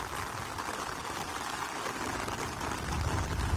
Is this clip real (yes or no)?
yes